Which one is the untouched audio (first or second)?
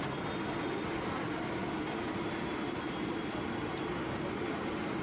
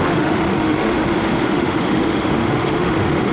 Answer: first